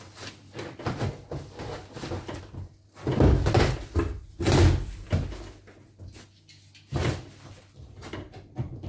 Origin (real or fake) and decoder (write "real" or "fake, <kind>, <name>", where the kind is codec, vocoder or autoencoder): real